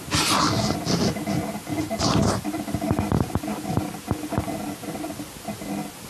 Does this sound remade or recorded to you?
recorded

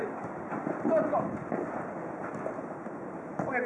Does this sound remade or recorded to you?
recorded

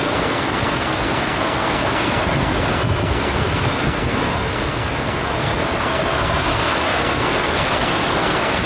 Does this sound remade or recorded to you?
remade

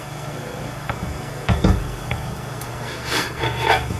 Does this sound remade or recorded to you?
remade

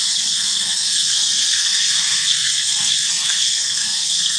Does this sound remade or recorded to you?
remade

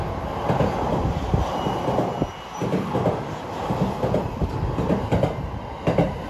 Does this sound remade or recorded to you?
recorded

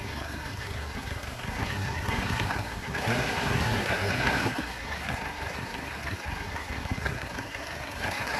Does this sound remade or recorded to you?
remade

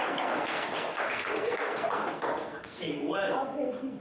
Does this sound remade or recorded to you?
remade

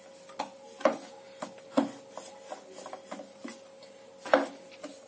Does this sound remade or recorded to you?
recorded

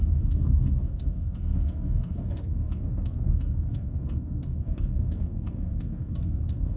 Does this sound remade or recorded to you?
remade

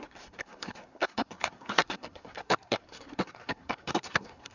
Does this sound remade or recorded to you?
remade